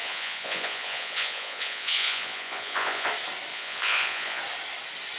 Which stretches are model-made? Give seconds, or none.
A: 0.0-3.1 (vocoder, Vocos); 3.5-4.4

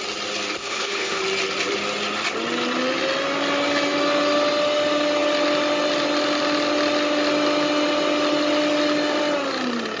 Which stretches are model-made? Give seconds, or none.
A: 0.6-1.2 (codec, HILCodec)

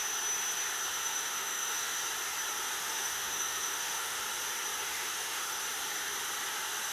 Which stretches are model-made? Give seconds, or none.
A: 0.9-2.0 (autoencoder, DAC-VAE); 2.8-4.2; 4.8-5.6

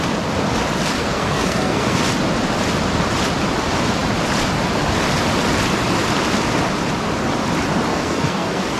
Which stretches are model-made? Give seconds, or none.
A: 1.0-2.0 (codec, SNAC); 7.9-8.8

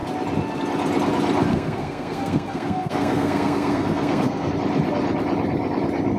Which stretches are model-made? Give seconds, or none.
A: 1.5-4.5 (codec, SNAC)